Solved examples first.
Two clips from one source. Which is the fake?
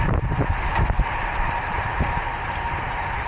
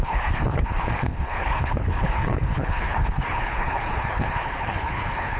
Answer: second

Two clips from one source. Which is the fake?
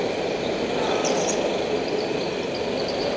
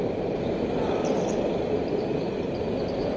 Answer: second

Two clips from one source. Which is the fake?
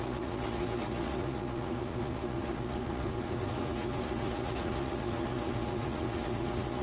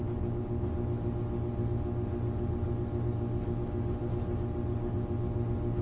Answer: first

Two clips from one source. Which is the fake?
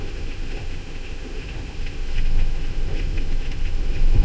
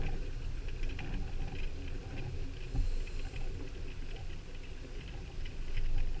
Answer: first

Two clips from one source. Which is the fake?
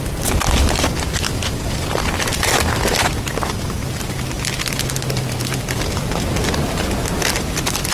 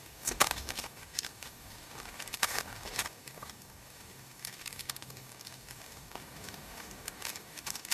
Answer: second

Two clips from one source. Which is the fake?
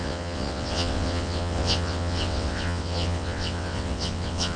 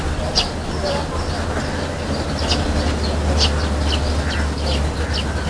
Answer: first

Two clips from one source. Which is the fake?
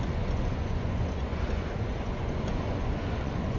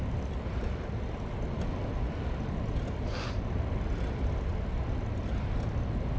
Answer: first